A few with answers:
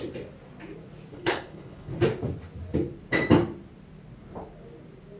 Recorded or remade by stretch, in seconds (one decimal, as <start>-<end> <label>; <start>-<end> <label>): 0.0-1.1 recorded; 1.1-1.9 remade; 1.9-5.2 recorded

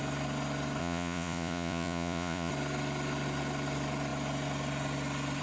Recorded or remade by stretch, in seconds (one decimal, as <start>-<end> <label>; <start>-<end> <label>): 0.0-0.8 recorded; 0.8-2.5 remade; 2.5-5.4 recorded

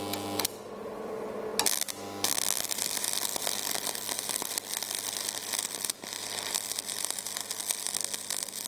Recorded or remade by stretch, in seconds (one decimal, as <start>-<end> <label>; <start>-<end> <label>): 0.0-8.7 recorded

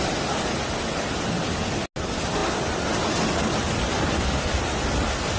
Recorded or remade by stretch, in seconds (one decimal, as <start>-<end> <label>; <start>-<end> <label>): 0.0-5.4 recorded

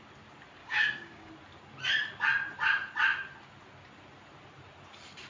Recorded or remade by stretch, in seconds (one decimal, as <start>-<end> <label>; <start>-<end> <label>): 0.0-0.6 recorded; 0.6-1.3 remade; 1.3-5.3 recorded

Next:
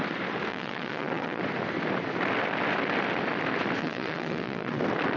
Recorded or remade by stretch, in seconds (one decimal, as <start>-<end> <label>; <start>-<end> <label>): 0.0-0.5 recorded; 0.5-1.4 remade; 1.4-3.8 recorded; 3.8-4.8 remade; 4.8-5.2 recorded

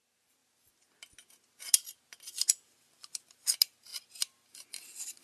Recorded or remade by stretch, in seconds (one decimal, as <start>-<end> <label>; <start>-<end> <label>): 0.0-5.2 recorded

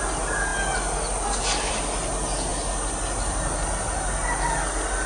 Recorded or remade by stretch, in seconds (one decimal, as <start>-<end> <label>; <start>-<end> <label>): 0.0-5.1 recorded